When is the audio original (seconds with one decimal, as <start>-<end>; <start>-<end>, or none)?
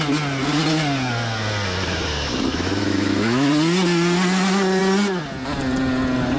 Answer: 0.0-2.5; 3.5-6.4